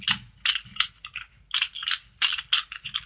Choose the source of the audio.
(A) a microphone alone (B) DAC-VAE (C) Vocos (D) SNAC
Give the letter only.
A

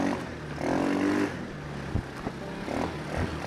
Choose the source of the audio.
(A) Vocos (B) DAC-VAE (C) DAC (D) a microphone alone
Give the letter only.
D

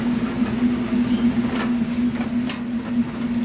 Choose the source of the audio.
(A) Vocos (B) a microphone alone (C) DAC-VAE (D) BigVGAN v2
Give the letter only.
B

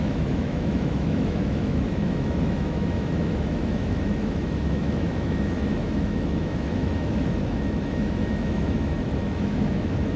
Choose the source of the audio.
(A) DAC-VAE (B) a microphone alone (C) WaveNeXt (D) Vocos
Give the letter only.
A